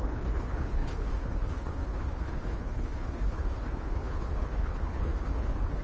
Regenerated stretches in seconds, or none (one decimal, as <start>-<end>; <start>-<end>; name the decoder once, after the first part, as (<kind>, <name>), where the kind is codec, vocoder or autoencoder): 0.0-5.8 (codec, HILCodec)